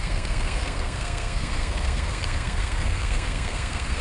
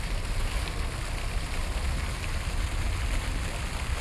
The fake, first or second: first